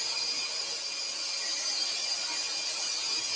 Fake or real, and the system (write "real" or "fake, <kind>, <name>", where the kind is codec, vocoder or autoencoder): real